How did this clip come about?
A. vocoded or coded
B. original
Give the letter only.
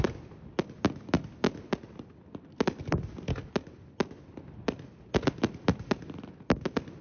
B